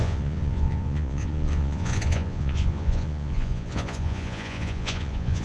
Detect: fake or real fake